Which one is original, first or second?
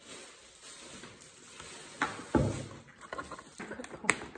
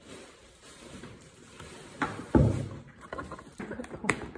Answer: first